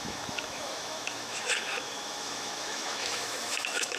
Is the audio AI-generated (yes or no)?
yes